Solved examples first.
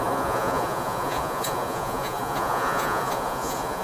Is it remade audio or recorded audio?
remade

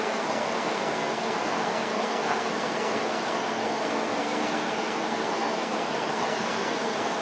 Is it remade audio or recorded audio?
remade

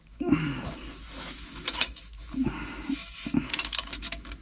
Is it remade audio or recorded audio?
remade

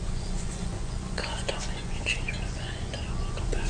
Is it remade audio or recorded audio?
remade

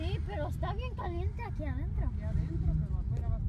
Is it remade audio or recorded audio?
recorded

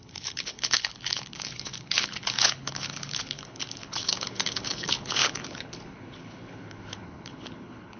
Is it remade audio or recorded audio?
remade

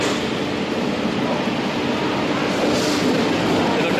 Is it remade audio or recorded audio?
recorded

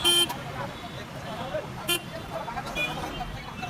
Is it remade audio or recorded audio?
recorded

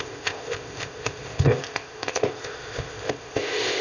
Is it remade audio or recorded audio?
remade